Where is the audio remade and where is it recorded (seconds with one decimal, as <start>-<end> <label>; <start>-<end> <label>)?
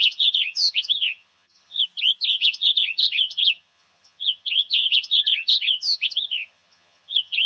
0.0-1.8 remade; 1.8-2.3 recorded; 2.3-7.5 remade